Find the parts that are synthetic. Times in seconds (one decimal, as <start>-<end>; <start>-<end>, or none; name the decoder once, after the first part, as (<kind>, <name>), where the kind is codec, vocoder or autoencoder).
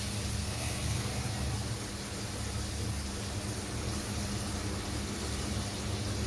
0.4-1.1 (codec, SNAC)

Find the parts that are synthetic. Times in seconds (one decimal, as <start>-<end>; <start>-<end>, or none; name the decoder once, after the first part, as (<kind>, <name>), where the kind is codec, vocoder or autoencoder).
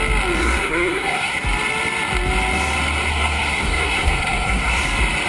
0.4-1.4 (codec, SNAC); 3.1-4.8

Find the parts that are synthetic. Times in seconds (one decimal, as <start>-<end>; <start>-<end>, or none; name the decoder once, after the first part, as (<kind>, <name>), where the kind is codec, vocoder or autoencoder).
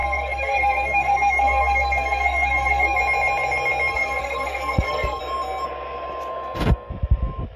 0.0-3.0 (codec, SNAC); 3.9-5.2; 6.3-6.9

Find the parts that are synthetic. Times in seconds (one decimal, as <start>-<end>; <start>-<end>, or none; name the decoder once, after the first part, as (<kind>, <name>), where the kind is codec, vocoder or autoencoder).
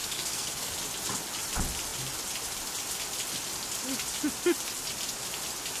0.0-0.7 (codec, SNAC)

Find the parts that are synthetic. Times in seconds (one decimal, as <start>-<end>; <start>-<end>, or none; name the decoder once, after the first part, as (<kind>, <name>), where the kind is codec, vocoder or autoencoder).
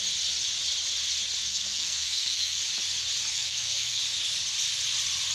1.5-2.6 (codec, SNAC); 3.3-4.0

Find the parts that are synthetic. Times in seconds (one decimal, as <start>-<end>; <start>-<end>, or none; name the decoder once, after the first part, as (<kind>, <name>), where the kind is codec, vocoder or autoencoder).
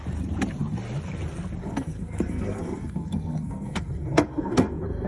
1.6-5.1 (codec, SNAC)